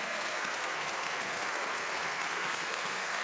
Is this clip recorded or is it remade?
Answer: remade